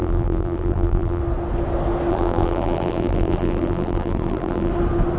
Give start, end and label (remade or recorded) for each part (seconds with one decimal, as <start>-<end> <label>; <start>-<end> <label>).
0.0-1.2 remade; 1.2-2.1 recorded; 2.1-4.7 remade; 4.7-5.2 recorded